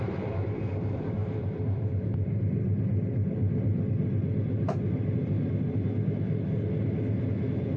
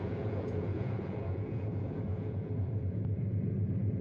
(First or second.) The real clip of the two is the first